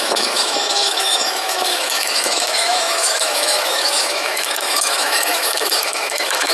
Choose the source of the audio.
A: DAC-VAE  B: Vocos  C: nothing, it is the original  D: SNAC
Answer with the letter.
A